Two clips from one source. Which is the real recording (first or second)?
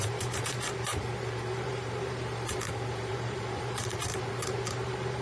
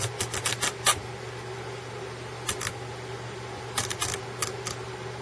second